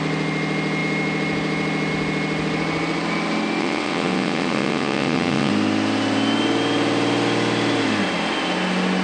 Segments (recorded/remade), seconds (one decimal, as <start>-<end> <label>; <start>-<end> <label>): 0.0-3.6 recorded; 3.6-5.5 remade; 5.5-9.0 recorded